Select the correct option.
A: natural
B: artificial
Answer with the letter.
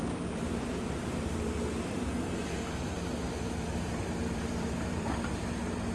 B